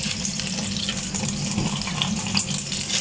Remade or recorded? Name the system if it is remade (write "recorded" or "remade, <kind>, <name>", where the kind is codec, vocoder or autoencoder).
recorded